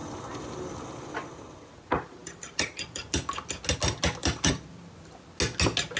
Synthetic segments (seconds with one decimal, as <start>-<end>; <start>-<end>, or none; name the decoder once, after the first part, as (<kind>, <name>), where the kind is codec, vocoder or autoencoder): 0.0-0.9 (vocoder, BigVGAN v2); 2.2-3.0; 4.2-5.3